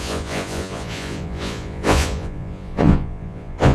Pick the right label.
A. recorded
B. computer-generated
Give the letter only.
B